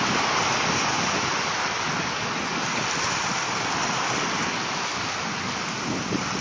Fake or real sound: real